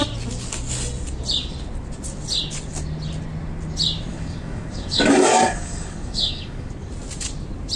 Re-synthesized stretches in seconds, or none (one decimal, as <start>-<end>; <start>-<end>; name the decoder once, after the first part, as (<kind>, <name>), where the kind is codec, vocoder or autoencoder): 4.1-6.7 (codec, DAC)